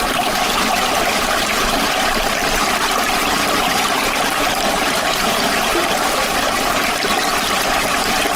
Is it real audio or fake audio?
fake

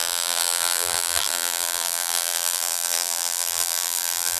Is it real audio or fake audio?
fake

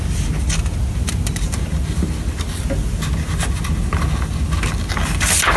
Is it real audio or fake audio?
real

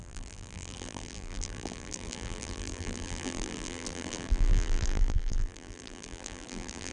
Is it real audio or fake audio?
fake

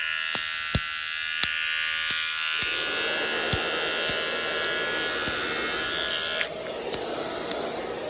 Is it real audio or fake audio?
real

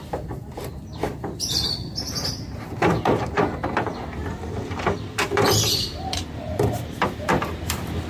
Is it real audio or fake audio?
fake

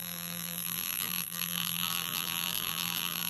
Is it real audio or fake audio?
fake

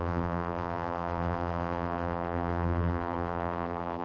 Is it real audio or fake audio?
fake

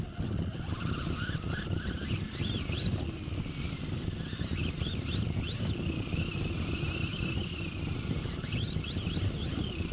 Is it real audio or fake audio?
real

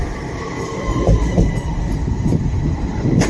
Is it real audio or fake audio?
fake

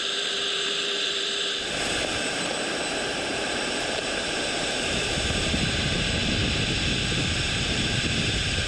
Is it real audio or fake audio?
fake